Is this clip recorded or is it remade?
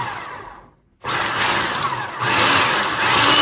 recorded